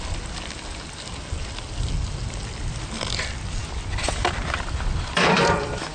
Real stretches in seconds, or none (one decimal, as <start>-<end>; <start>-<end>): 3.6-4.4